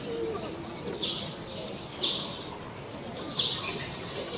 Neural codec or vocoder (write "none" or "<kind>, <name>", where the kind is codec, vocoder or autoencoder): none